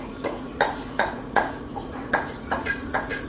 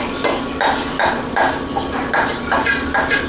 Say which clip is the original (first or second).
second